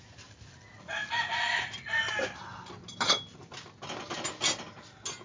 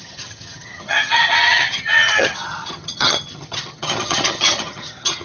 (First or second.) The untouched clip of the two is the first